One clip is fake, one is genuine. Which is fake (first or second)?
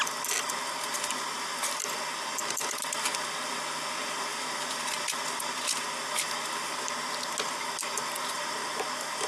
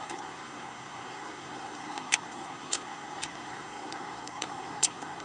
second